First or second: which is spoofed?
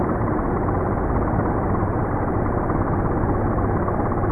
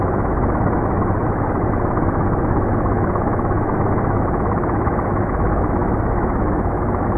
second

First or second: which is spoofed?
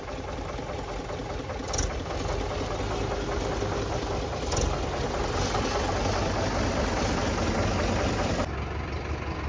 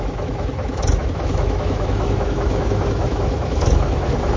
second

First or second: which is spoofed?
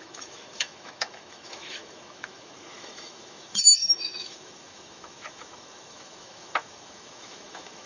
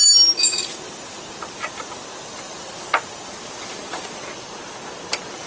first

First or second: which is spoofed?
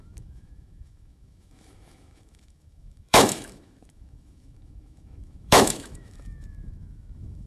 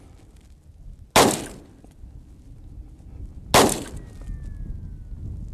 first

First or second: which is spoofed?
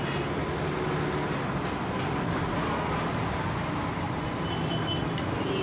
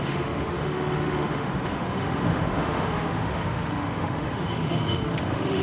second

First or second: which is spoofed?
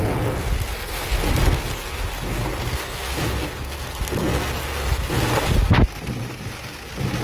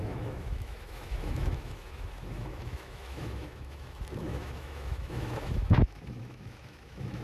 second